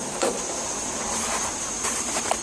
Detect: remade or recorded remade